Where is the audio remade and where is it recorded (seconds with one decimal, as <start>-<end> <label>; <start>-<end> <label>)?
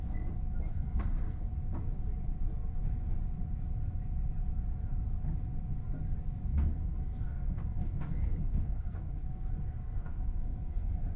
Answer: 0.0-0.7 recorded; 0.7-1.4 remade; 1.4-6.5 recorded; 6.5-11.2 remade